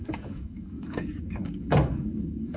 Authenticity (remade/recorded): remade